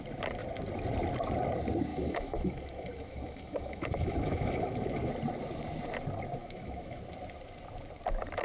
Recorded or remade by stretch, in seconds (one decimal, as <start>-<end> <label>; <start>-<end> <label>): 0.0-1.9 recorded; 1.9-5.1 remade; 5.1-6.4 recorded; 6.4-7.0 remade; 7.0-8.4 recorded